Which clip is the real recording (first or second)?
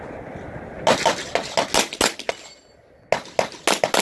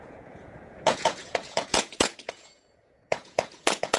first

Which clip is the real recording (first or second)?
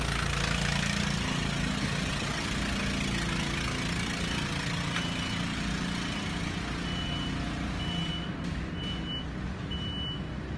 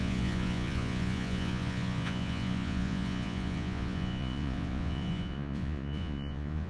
first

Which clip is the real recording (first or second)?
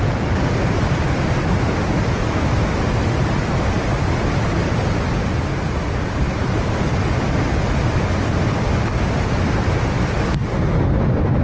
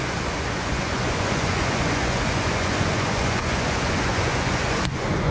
first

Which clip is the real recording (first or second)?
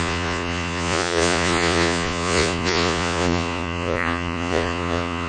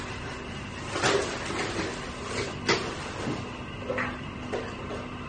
second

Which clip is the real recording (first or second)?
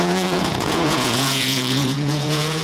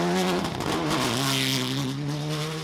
second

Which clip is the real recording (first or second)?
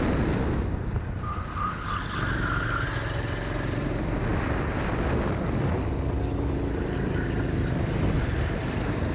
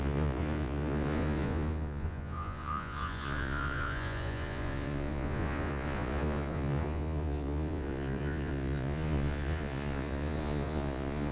first